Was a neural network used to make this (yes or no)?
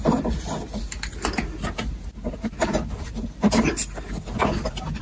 no